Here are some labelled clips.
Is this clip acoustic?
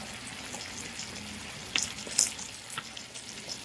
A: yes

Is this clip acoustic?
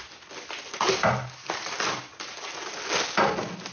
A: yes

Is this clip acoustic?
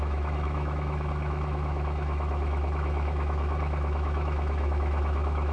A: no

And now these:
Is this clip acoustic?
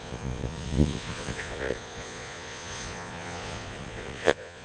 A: no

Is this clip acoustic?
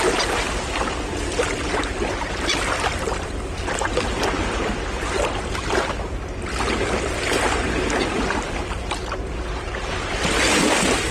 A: yes